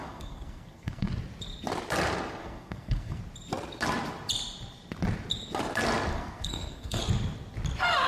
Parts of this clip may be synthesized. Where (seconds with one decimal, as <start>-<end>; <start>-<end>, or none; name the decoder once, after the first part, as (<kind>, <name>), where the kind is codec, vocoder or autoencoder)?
0.0-1.1 (codec, SNAC); 2.4-3.2; 6.1-7.0